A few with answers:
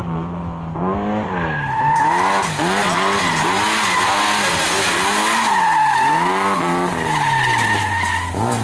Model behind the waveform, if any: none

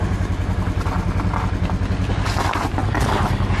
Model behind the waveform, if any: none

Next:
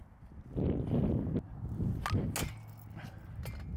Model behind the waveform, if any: none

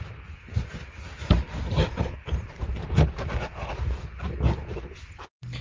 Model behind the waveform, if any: none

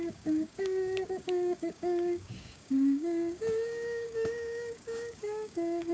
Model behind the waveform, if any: codec, DAC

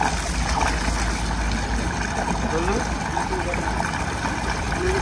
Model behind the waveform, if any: none